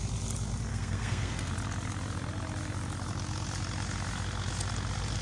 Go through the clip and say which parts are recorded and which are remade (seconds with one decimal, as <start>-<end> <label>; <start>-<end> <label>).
0.0-0.7 recorded; 0.7-1.5 remade; 1.5-5.2 recorded